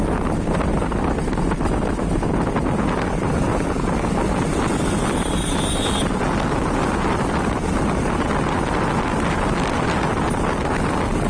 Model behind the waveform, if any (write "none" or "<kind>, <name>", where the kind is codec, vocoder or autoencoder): none